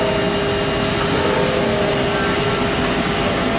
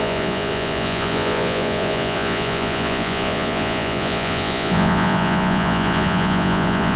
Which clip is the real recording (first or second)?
first